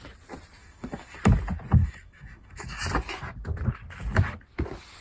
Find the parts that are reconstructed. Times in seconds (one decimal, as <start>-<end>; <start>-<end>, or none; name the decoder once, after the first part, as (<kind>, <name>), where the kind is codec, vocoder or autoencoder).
0.6-1.2 (autoencoder, DAC-VAE); 1.8-2.8